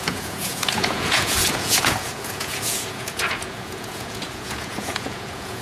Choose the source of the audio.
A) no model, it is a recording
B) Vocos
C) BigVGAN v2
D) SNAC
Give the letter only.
B